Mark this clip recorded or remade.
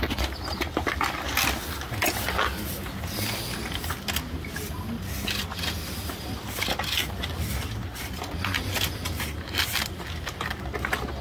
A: recorded